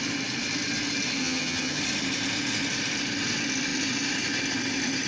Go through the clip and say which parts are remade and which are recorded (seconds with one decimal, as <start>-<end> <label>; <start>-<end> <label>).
0.0-1.2 recorded; 1.2-1.8 remade; 1.8-5.1 recorded